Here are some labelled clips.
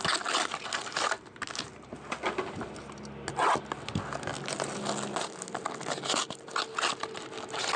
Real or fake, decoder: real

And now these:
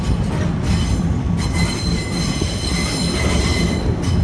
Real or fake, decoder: real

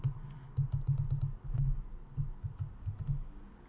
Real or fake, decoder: real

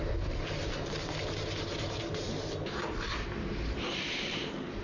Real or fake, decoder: fake, vocoder, BigVGAN v2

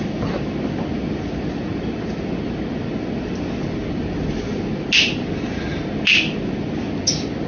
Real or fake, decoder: real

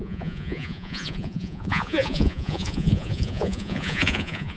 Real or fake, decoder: fake, vocoder, Vocos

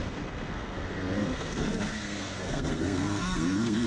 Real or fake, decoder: fake, codec, SNAC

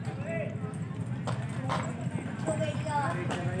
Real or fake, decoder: real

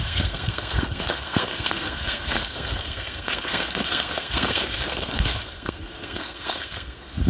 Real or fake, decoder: fake, codec, SNAC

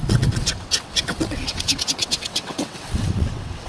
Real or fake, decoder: fake, vocoder, WaveNeXt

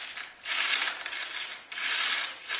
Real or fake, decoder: real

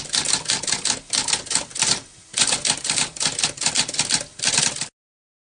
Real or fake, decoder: real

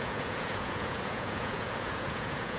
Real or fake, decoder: fake, vocoder, Vocos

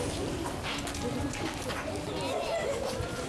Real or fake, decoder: real